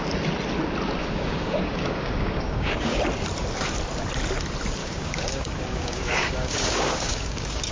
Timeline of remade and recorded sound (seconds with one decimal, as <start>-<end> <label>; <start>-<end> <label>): 0.0-1.0 recorded; 1.0-3.0 remade; 3.0-4.8 recorded; 4.8-7.7 remade